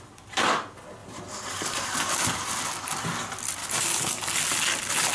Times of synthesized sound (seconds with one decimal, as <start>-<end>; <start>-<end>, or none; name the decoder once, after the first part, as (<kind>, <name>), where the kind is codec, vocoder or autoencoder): none